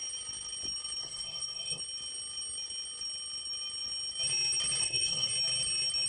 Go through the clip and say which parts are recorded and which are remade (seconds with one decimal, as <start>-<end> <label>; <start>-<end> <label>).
0.0-1.0 recorded; 1.0-1.8 remade; 1.8-4.8 recorded; 4.8-5.3 remade; 5.3-6.1 recorded